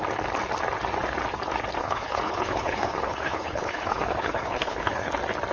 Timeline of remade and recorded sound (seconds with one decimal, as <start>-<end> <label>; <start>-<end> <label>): 0.0-1.8 recorded; 1.8-5.1 remade; 5.1-5.5 recorded

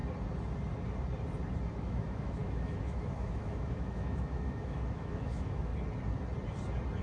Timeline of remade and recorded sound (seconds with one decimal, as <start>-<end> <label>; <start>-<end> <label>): 0.0-1.7 recorded; 1.7-5.7 remade; 5.7-7.0 recorded

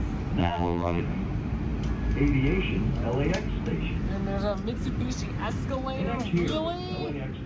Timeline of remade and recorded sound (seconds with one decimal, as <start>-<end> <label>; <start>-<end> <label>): 0.0-0.4 recorded; 0.4-1.0 remade; 1.0-7.5 recorded

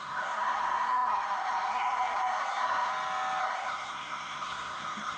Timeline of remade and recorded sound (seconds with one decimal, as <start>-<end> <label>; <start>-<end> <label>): 0.0-2.9 remade; 2.9-3.4 recorded; 3.4-5.2 remade